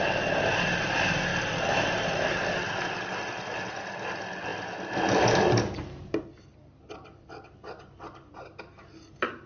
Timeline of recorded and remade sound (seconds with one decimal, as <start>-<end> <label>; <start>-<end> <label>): 0.0-9.5 recorded